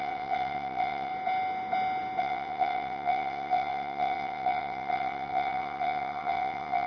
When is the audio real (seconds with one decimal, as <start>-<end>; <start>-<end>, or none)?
1.1-2.2